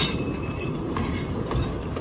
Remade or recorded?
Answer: recorded